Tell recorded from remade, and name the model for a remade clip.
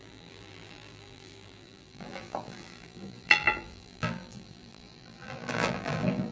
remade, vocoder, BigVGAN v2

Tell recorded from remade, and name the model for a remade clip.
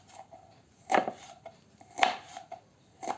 remade, vocoder, BigVGAN v2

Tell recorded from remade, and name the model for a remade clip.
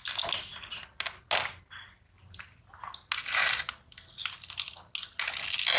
recorded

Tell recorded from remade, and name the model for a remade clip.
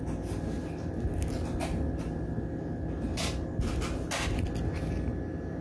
recorded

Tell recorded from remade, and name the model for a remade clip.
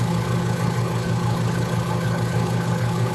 remade, codec, HILCodec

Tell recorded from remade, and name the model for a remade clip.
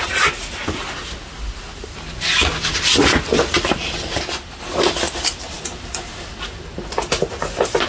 recorded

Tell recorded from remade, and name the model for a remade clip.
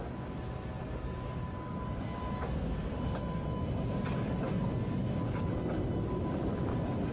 recorded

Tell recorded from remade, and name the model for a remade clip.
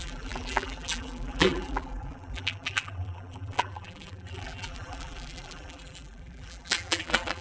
remade, vocoder, BigVGAN v2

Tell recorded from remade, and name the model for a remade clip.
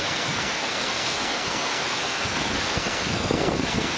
remade, codec, SNAC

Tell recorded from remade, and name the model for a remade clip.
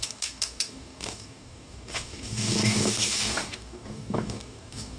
remade, codec, DAC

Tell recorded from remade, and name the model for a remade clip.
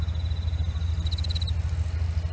recorded